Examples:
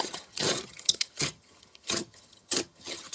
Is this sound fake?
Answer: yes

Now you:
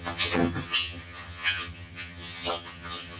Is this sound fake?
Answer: yes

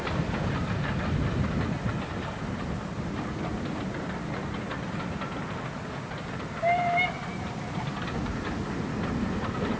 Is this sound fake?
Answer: no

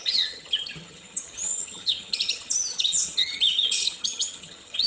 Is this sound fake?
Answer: yes